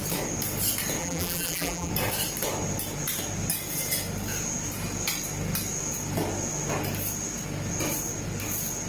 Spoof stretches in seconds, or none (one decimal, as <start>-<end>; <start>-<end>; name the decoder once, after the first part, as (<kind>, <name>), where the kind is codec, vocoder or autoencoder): 1.0-1.9 (vocoder, BigVGAN v2)